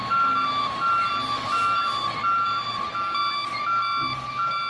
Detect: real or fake real